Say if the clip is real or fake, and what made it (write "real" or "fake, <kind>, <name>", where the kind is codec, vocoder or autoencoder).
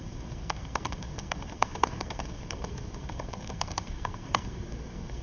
fake, codec, SNAC